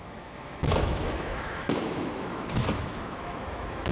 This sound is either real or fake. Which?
fake